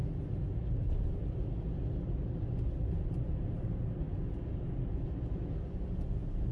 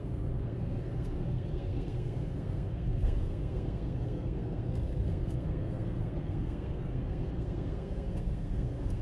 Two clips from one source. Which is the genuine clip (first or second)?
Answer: first